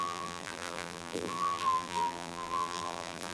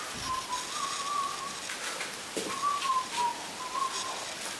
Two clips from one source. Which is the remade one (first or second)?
first